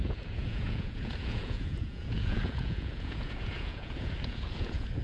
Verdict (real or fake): fake